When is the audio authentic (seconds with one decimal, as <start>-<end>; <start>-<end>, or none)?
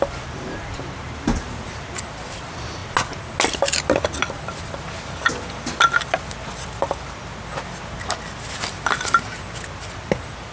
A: 0.0-10.5